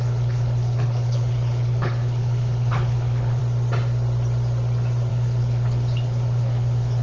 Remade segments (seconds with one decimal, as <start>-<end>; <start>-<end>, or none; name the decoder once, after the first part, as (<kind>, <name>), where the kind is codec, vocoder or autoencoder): 0.0-3.4 (codec, HILCodec); 5.1-7.0